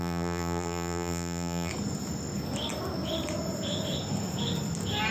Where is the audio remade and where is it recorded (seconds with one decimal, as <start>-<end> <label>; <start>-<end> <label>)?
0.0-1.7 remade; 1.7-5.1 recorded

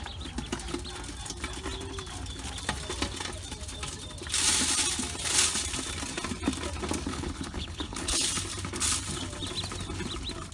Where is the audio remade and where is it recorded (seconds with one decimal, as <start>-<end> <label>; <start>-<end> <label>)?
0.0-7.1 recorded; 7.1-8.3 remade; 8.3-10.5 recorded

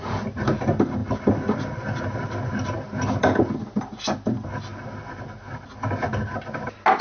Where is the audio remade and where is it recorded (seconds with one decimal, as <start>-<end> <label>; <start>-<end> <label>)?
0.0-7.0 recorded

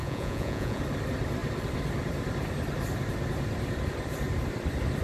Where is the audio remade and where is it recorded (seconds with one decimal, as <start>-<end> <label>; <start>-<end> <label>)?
0.0-0.8 remade; 0.8-5.0 recorded

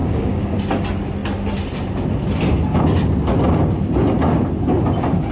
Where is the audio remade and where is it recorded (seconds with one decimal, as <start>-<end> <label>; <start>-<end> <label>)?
0.0-0.6 remade; 0.6-5.3 recorded

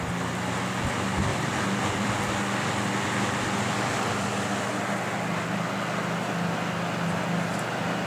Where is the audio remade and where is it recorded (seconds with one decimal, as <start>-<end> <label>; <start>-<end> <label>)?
0.0-1.3 recorded; 1.3-2.1 remade; 2.1-8.1 recorded